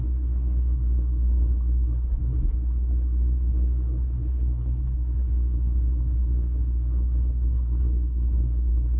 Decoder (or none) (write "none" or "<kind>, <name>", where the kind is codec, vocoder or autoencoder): codec, SNAC